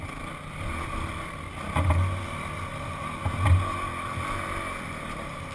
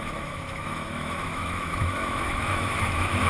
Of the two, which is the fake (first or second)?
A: second